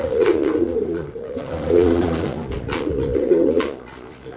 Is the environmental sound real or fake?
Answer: fake